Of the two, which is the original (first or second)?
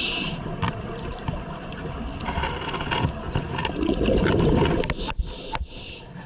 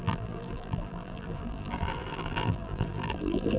first